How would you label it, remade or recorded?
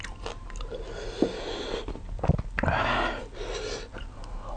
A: recorded